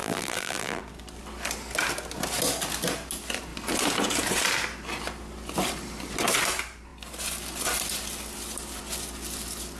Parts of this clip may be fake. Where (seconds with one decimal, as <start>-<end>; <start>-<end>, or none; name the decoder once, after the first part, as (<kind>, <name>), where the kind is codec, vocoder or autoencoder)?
0.0-0.8 (vocoder, BigVGAN v2)